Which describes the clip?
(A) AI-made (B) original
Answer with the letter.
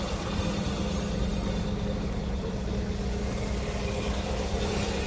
B